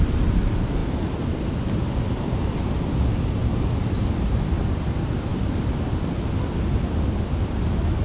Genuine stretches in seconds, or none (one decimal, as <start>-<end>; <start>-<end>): 0.0-8.0

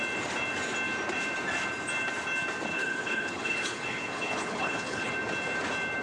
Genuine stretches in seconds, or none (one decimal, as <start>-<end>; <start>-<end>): 0.0-2.7; 5.1-6.0

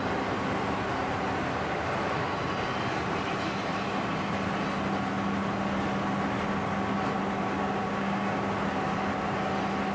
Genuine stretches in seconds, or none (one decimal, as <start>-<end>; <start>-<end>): 0.0-7.8; 8.4-9.9

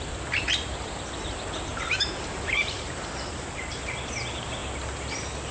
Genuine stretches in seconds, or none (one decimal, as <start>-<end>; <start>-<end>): 0.0-1.7; 3.6-5.5

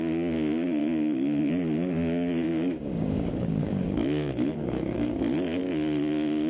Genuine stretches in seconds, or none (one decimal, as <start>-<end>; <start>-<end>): 5.6-6.5

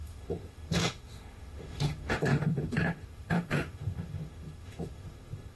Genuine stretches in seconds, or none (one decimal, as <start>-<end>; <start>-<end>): none

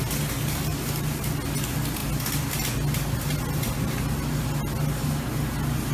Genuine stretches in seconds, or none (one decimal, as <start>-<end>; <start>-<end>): 0.0-0.7; 1.2-5.9